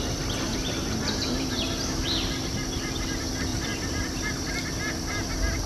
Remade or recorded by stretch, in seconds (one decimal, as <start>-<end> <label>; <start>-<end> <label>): 0.0-3.5 recorded; 3.5-4.5 remade; 4.5-5.7 recorded